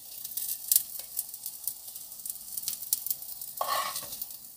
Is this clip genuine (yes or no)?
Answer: yes